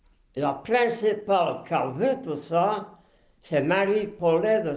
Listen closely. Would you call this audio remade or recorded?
recorded